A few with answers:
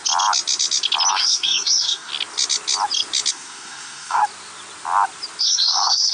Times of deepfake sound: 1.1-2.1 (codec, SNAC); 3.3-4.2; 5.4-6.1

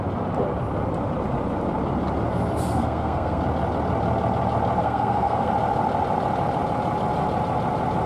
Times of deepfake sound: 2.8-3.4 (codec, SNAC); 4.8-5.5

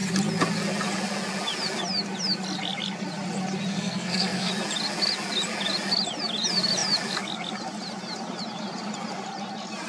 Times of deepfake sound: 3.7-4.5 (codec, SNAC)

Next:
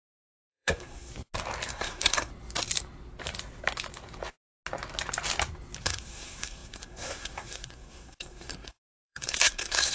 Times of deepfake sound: 0.0-1.1 (codec, SNAC); 1.7-2.3; 5.8-9.9